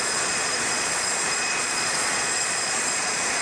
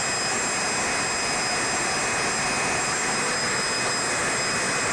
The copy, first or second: first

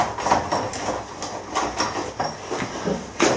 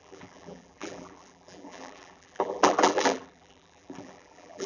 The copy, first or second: second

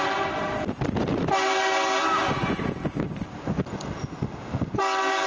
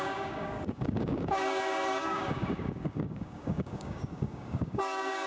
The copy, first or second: second